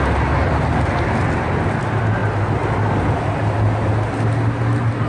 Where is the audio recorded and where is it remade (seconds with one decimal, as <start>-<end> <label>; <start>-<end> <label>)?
0.0-5.1 recorded